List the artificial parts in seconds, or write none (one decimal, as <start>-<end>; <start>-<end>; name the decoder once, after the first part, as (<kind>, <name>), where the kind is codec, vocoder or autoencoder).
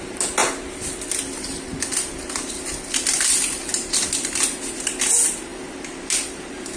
none